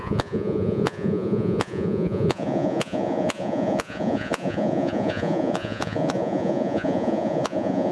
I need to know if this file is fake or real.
fake